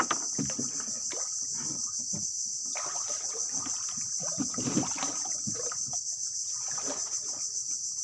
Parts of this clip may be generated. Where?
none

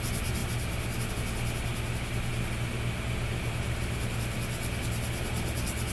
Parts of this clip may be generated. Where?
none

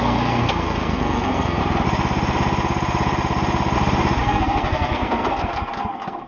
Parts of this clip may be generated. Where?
0.0-1.6 (codec, SNAC); 4.2-6.3

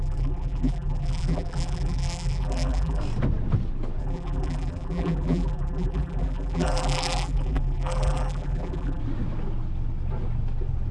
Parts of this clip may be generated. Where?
0.0-3.0 (vocoder, BigVGAN v2); 4.0-9.0

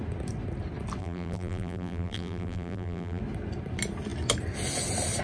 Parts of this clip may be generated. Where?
1.0-3.2 (vocoder, BigVGAN v2)

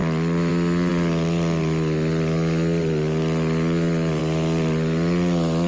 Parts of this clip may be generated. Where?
none